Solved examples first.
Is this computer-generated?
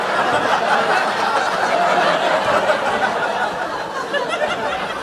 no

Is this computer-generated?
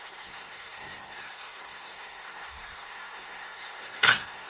yes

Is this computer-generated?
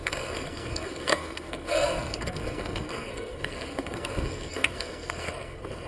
yes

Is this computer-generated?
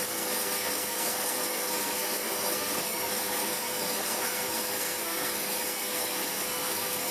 yes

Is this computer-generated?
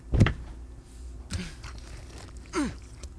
no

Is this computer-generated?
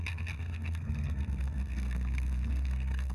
yes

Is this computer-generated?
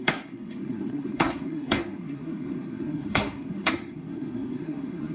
yes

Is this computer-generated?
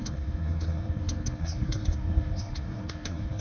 yes